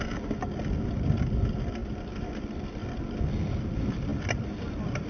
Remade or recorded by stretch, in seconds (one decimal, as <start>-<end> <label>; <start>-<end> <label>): 0.0-1.8 recorded; 1.8-2.4 remade; 2.4-5.1 recorded

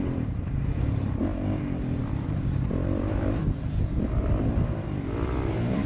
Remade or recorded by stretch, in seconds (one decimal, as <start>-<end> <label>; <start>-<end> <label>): 0.0-1.3 remade; 1.3-2.0 recorded; 2.0-3.4 remade; 3.4-4.2 recorded; 4.2-5.9 remade

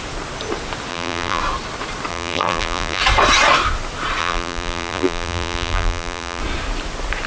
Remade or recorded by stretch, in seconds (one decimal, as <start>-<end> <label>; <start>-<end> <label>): 0.0-0.9 recorded; 0.9-1.4 remade; 1.4-2.1 recorded; 2.1-3.0 remade; 3.0-4.2 recorded; 4.2-6.4 remade; 6.4-7.3 recorded

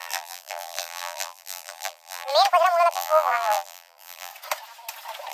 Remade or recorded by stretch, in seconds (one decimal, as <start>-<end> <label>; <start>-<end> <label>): 0.0-2.3 remade; 2.3-2.9 recorded; 2.9-4.3 remade; 4.3-5.3 recorded